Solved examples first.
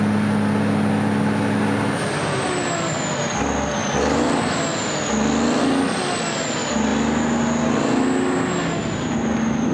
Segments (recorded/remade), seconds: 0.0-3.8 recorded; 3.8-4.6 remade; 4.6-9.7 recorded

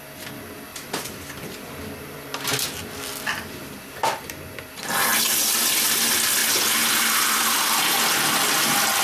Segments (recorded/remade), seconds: 0.0-0.7 recorded; 0.7-4.3 remade; 4.3-5.1 recorded; 5.1-5.7 remade; 5.7-6.4 recorded; 6.4-9.0 remade